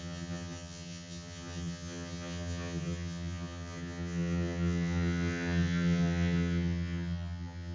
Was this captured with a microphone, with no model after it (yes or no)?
no